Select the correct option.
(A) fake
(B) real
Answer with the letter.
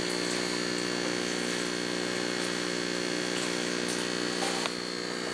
B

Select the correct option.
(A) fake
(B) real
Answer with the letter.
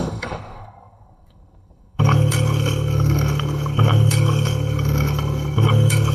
A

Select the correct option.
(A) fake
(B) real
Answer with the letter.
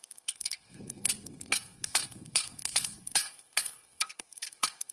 A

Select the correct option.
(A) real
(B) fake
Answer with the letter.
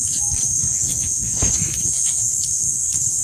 B